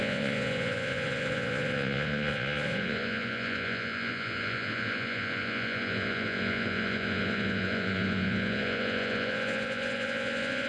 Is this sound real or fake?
fake